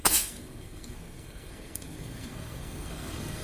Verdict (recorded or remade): remade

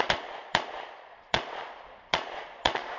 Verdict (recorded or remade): remade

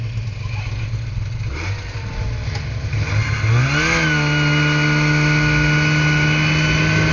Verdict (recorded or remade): recorded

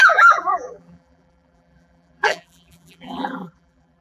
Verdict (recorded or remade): remade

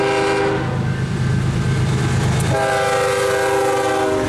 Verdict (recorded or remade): recorded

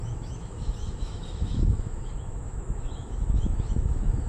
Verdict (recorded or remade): remade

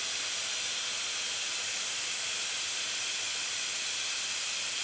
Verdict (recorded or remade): recorded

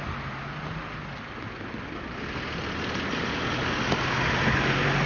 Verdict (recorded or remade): recorded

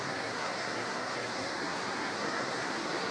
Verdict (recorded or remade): remade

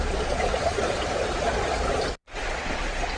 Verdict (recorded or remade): remade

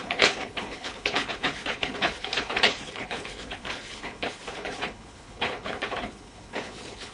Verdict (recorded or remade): remade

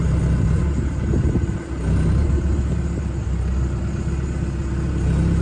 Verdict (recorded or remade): recorded